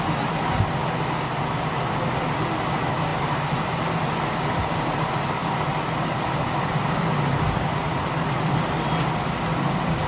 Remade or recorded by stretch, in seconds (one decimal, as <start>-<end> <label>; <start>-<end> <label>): 0.0-5.4 recorded; 5.4-6.7 remade; 6.7-10.1 recorded